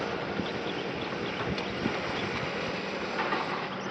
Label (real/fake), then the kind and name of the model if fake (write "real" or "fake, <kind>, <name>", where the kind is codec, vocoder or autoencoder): real